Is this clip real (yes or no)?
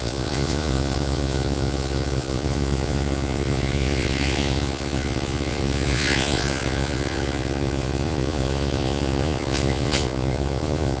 no